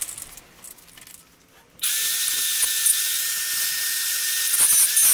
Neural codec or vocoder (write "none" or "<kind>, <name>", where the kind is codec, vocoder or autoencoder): none